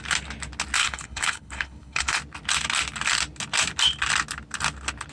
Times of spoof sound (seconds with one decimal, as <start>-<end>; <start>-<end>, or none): 0.8-2.2